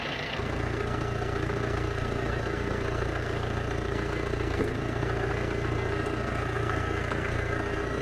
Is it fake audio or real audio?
fake